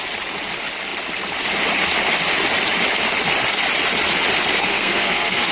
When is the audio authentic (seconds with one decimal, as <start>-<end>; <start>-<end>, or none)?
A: 0.0-4.5